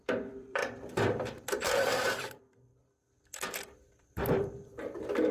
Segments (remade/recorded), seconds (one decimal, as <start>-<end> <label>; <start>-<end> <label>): 0.0-5.3 remade